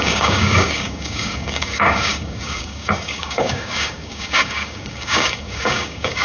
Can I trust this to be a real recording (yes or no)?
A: no